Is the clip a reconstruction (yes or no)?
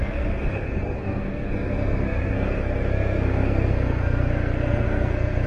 yes